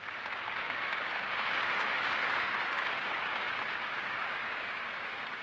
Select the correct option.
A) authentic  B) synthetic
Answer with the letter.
B